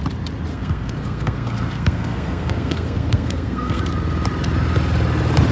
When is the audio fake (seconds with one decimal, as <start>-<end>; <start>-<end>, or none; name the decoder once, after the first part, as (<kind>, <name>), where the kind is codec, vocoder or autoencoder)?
0.5-3.8 (codec, SNAC)